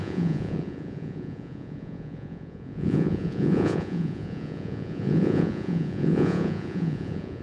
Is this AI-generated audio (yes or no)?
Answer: yes